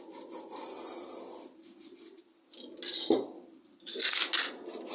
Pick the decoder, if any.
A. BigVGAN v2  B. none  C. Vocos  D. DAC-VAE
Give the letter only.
B